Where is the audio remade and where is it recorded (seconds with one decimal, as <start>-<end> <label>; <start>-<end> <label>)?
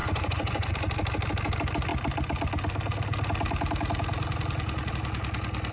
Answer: 0.0-0.7 remade; 0.7-5.7 recorded